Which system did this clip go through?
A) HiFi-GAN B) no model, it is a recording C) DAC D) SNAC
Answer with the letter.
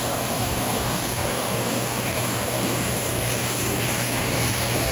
C